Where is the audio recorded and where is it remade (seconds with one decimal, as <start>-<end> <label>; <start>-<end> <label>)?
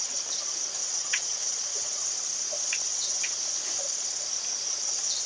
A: 0.0-0.8 recorded; 0.8-2.0 remade; 2.0-2.9 recorded; 2.9-3.4 remade; 3.4-5.3 recorded